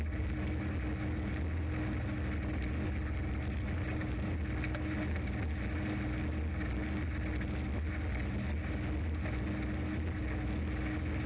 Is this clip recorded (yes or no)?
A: yes